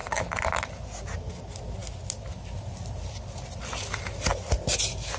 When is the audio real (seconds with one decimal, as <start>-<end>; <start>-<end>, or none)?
0.0-5.2